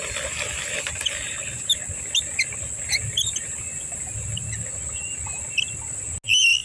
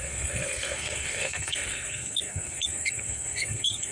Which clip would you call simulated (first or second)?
second